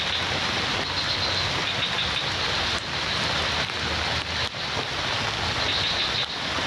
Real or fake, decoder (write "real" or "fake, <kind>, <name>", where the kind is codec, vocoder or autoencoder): real